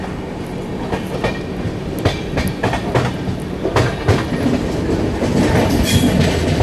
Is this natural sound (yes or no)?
yes